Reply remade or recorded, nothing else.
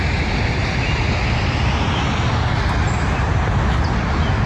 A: recorded